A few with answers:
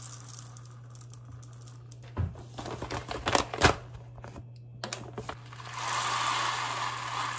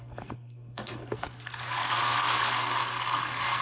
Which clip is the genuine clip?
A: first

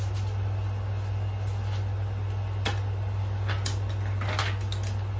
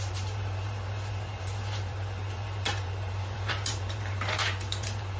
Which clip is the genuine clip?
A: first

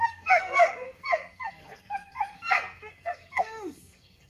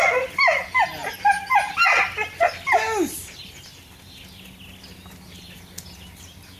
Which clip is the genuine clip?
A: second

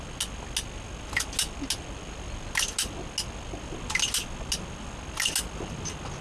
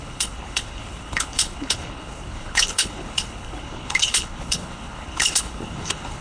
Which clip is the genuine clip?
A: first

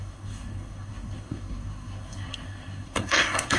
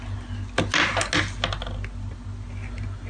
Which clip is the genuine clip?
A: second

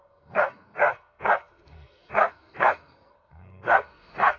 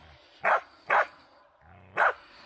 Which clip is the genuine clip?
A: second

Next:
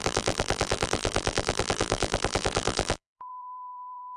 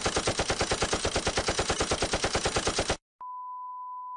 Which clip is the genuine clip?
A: second